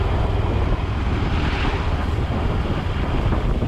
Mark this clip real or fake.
fake